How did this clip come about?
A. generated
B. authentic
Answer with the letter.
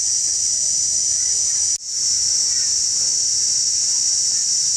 B